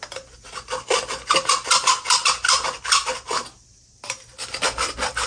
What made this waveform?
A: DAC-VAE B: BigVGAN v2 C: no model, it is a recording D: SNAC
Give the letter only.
C